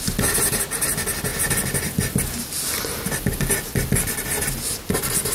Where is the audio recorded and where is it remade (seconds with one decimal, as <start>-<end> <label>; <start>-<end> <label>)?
0.0-5.3 recorded